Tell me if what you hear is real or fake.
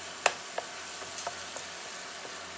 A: real